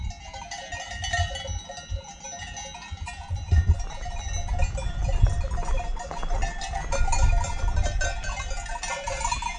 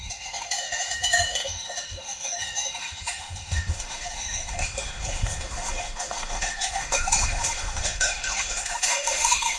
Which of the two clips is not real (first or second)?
second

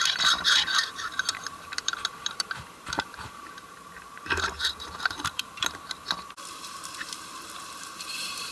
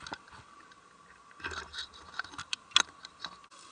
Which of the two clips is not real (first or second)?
first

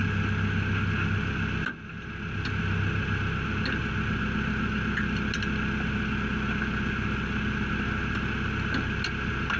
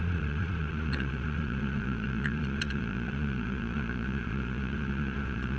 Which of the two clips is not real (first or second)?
second